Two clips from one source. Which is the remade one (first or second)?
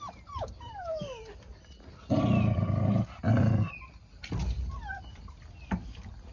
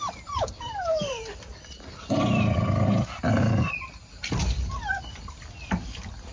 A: second